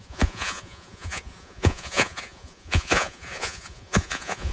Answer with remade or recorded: remade